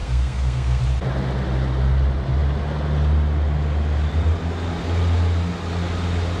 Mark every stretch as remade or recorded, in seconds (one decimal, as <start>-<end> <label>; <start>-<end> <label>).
0.0-0.8 remade; 0.8-6.4 recorded